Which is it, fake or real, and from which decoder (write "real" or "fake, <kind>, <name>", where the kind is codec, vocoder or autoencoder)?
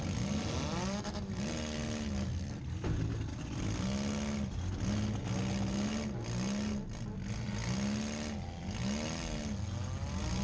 real